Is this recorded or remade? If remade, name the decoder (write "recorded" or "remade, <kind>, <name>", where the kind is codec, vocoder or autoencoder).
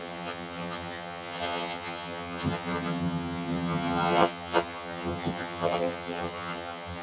remade, vocoder, HiFi-GAN